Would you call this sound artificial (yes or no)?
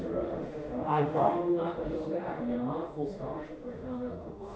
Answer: yes